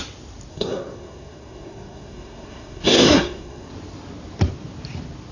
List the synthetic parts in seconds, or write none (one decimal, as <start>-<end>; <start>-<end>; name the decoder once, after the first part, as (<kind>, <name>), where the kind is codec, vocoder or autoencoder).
0.5-3.7 (codec, SNAC)

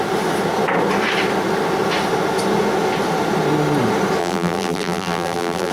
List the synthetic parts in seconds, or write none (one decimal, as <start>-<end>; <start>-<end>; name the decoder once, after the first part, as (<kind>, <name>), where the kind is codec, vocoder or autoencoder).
4.2-5.7 (vocoder, BigVGAN v2)

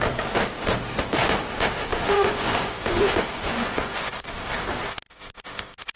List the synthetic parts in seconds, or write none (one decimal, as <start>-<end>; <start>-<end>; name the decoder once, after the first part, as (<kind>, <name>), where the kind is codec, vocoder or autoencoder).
1.9-4.3 (vocoder, Vocos)

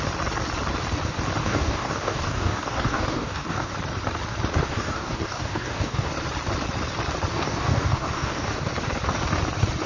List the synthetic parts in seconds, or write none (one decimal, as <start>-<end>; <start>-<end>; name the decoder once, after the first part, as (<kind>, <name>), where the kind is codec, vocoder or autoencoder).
1.4-3.7 (codec, DAC); 4.7-6.1; 7.3-8.7

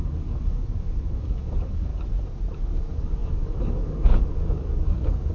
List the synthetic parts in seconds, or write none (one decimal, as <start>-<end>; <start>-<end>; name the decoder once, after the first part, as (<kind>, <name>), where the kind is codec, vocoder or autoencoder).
0.0-1.9 (codec, DAC); 2.8-5.3

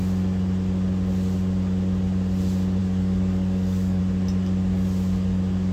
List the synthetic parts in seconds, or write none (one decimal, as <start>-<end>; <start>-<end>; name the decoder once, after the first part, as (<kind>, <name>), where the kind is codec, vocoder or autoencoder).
2.8-4.0 (codec, DAC)

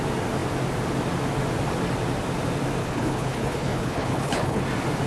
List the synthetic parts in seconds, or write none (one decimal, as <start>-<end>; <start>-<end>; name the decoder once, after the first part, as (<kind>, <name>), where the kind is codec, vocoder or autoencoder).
2.8-4.6 (codec, HILCodec)

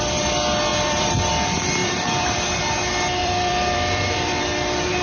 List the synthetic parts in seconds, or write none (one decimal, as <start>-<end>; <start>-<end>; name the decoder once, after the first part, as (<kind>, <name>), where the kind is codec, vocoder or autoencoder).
0.7-1.2 (vocoder, BigVGAN v2); 1.8-2.6; 3.2-4.4